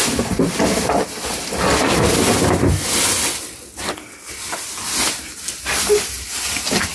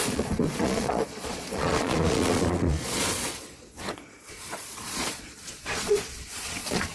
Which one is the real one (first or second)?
first